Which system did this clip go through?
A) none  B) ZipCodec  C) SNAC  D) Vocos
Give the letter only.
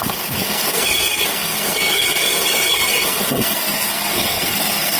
C